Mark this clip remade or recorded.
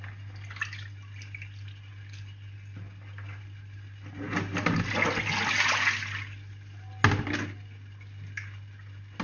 recorded